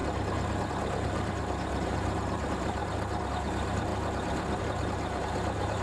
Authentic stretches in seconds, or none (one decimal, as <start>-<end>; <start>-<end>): 0.0-0.7; 2.8-3.3; 3.9-4.6